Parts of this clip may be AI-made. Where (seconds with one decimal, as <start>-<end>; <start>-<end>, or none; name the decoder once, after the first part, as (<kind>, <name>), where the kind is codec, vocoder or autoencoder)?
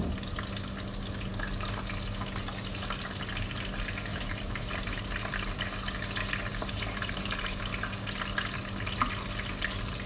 4.1-5.0 (vocoder, BigVGAN v2); 6.5-7.6